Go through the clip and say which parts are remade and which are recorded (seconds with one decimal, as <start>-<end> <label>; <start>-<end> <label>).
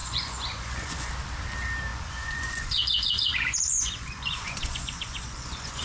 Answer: 0.0-1.1 remade; 1.1-1.9 recorded; 1.9-5.8 remade